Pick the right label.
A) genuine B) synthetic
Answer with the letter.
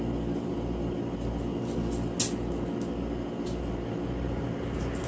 A